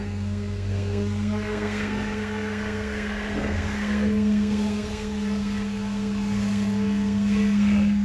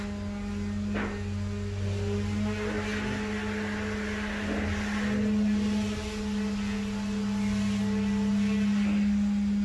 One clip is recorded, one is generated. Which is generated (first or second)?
first